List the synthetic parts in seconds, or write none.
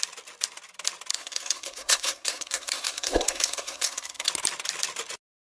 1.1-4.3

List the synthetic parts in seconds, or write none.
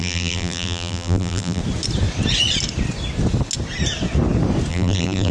0.0-1.6; 4.7-5.3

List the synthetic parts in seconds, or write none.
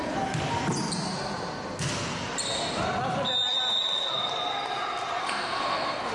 5.2-6.1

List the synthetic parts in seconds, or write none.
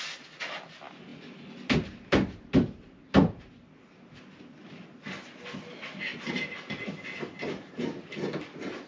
none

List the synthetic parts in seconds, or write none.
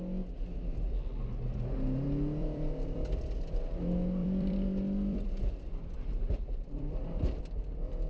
2.4-3.8; 4.2-7.4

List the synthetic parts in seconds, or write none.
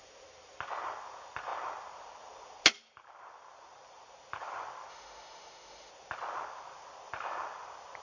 4.9-5.9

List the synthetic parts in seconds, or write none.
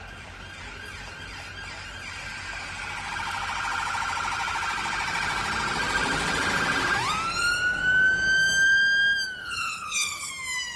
9.4-10.3